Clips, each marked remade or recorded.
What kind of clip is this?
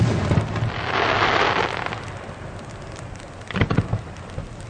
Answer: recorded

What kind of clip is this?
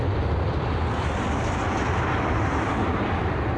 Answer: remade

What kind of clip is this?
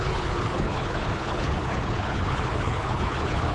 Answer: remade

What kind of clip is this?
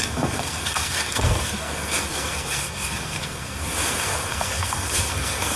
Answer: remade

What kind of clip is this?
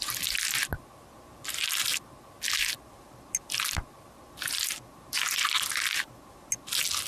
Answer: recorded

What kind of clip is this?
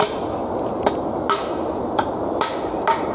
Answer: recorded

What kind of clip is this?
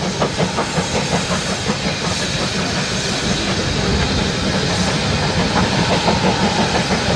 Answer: remade